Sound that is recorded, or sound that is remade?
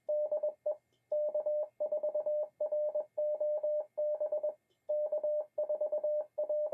recorded